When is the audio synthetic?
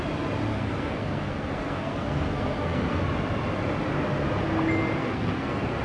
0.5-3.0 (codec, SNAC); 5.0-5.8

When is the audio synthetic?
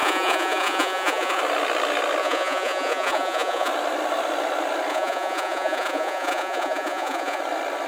0.0-1.4 (vocoder, Vocos); 2.2-3.7; 4.9-7.4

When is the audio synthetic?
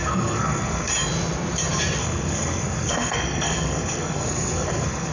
0.0-0.9 (codec, SNAC); 2.0-5.1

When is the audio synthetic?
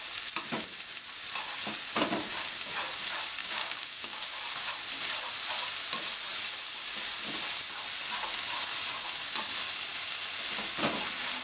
3.4-4.4 (codec, DAC)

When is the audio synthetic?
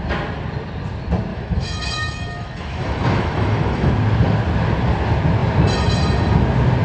1.3-3.9 (autoencoder, DAC-VAE)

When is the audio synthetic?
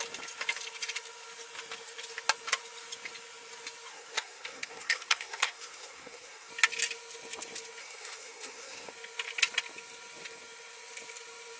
3.9-6.5 (codec, SNAC); 7.8-8.9